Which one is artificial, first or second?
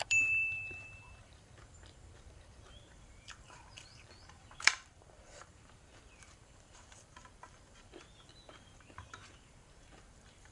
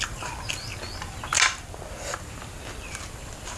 first